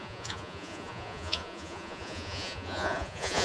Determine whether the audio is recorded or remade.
remade